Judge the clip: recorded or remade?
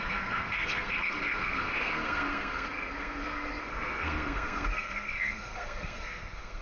remade